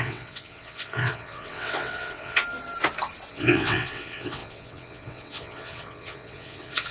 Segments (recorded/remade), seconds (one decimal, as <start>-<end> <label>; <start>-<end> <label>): 0.0-2.4 remade; 2.4-3.3 recorded; 3.3-6.9 remade